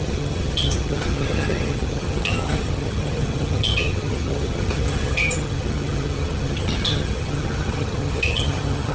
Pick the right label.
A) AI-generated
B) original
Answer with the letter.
A